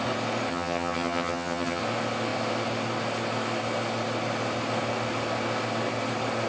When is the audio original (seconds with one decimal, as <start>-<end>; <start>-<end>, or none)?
0.0-0.5; 1.8-6.5